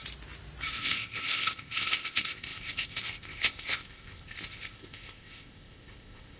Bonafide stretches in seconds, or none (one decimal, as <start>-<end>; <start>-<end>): 0.0-0.7